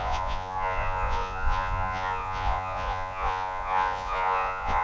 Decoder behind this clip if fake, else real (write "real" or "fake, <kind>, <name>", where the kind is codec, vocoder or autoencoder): fake, vocoder, Vocos